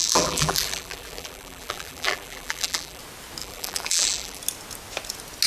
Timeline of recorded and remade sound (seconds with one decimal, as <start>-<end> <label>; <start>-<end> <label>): 0.0-3.0 remade; 3.0-3.4 recorded; 3.4-4.4 remade; 4.4-5.5 recorded

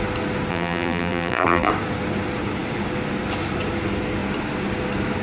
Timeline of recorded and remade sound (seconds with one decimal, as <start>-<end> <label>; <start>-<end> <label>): 0.0-0.5 recorded; 0.5-1.7 remade; 1.7-5.2 recorded

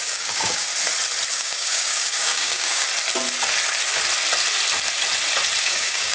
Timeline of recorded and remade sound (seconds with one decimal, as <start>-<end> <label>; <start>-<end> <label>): 0.0-0.7 remade; 0.7-1.3 recorded; 1.3-2.9 remade; 2.9-5.6 recorded; 5.6-6.1 remade